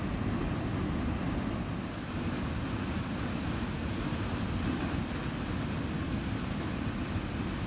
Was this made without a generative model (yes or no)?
yes